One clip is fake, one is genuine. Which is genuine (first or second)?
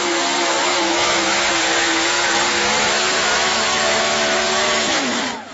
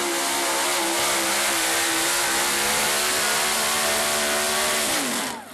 second